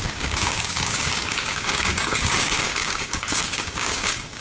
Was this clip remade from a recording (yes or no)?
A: yes